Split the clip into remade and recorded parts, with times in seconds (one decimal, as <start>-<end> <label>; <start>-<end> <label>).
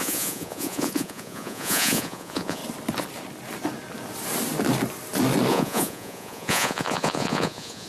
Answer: 0.0-2.6 remade; 2.6-5.5 recorded; 5.5-7.9 remade